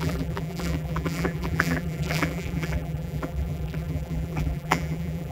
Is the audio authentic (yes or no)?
no